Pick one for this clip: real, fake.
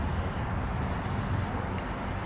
real